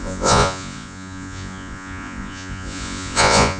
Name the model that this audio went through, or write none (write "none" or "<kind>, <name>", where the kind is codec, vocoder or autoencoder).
vocoder, Vocos